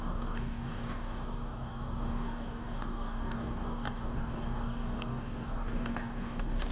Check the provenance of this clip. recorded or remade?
remade